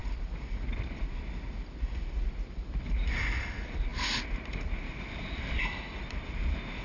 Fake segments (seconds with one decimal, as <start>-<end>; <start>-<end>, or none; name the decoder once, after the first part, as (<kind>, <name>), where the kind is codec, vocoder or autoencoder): none